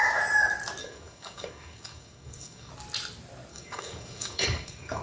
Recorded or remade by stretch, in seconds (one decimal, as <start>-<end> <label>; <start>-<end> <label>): 0.0-0.8 recorded; 0.8-2.7 remade; 2.7-3.5 recorded; 3.5-5.0 remade